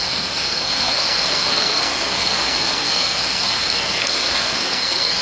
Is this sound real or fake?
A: fake